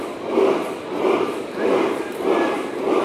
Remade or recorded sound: remade